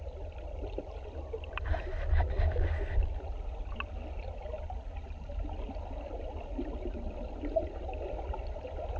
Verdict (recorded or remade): recorded